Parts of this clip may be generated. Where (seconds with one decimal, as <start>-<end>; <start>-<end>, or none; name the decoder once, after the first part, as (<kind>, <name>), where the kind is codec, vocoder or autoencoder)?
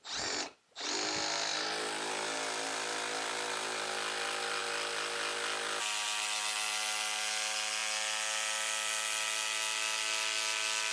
none